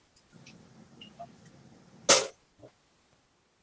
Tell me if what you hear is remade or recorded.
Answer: recorded